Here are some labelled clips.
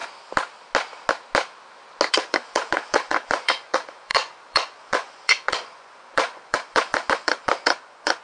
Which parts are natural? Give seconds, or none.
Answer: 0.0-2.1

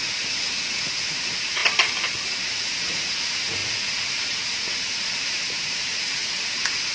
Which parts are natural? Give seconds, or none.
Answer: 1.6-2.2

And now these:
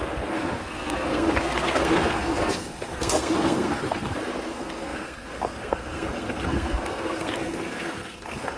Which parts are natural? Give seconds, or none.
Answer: none

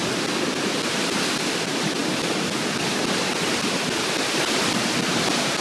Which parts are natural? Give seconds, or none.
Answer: 0.0-5.6

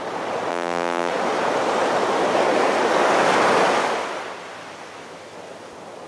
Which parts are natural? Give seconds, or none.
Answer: 0.0-0.5; 1.1-6.1